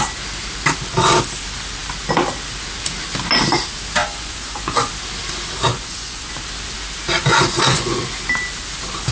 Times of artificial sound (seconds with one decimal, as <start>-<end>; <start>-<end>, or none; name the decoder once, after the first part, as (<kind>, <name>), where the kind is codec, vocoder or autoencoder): 4.0-4.9 (vocoder, Vocos); 5.7-6.3; 7.3-8.0